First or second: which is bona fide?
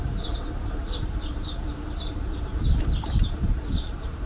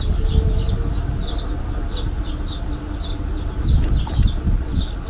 second